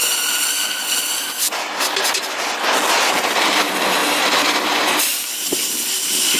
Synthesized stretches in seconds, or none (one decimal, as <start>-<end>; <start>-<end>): none